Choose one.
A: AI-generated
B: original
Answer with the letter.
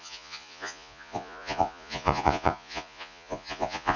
A